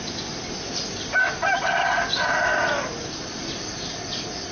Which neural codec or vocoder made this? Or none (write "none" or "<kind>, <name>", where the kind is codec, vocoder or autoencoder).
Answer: none